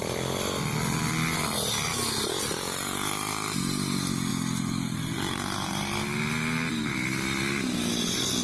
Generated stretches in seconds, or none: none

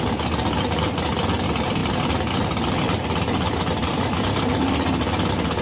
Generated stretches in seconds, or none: none

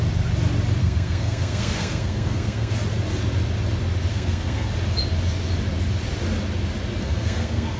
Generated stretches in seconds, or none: 0.8-2.7 (codec, SNAC); 4.1-4.7; 7.0-7.8

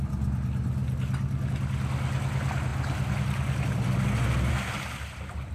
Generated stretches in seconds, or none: none

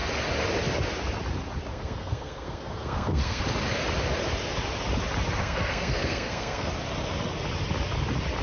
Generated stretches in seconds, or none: 1.7-3.4 (codec, SNAC); 5.4-6.7

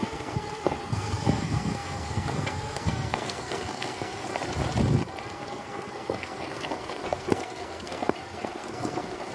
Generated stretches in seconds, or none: 0.0-4.3 (codec, SNAC); 5.3-9.3